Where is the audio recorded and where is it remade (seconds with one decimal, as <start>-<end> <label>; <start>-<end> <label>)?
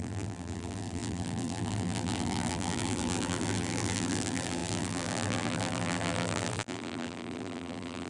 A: 0.0-8.1 remade